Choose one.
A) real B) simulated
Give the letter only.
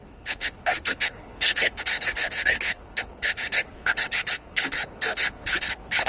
B